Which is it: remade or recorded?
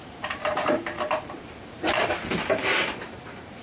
remade